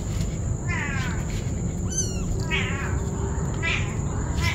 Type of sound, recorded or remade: recorded